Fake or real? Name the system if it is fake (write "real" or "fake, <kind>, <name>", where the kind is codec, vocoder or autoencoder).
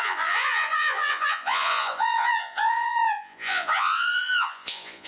fake, vocoder, Vocos